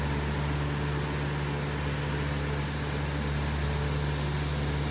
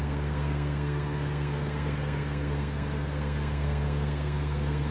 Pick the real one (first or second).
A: first